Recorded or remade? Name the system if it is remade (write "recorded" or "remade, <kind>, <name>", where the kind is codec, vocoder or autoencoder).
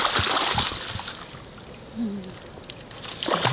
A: recorded